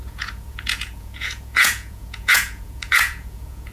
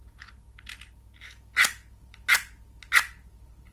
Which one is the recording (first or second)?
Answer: second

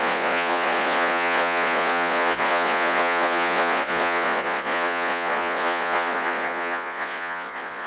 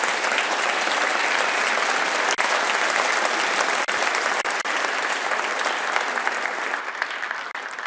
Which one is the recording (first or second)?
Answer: second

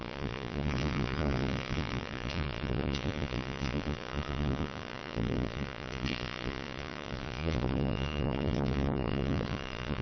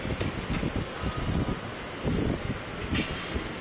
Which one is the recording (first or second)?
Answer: second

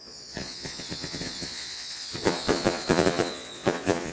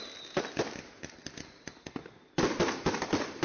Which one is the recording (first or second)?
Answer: second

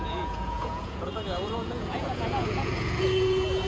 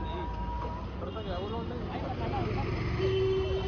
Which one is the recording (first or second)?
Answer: second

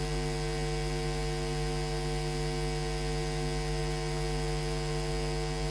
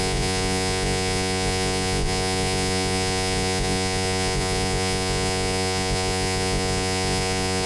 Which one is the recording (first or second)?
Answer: first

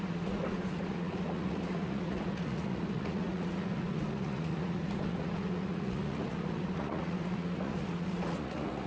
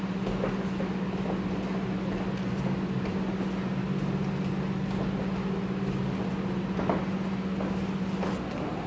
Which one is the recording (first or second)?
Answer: second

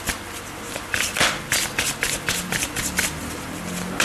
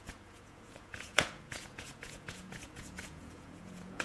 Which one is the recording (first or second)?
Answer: first